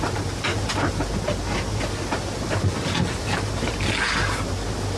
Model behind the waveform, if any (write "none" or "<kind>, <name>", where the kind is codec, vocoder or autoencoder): none